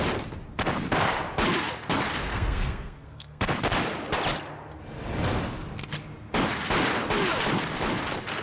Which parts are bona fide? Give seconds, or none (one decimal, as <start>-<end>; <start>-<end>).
0.0-2.3; 3.4-8.4